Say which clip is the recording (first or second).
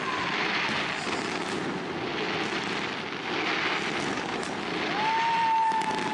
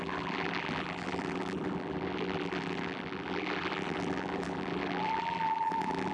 first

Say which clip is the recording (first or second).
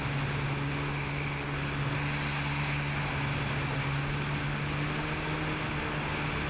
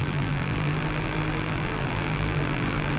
first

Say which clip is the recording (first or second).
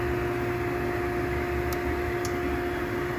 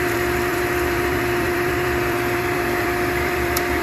first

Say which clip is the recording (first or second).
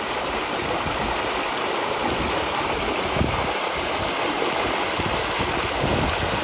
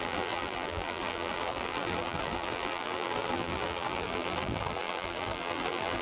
first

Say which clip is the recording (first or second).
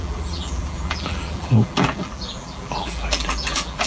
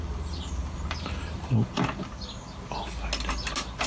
second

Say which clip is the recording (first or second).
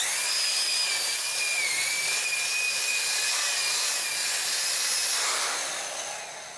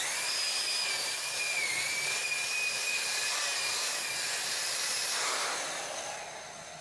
first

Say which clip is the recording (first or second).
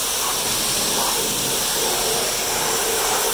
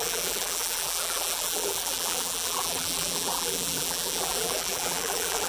first